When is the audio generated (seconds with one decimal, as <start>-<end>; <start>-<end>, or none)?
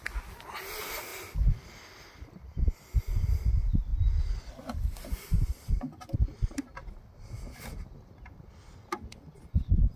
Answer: none